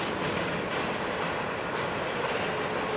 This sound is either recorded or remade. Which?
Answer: recorded